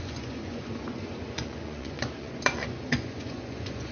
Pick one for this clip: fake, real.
fake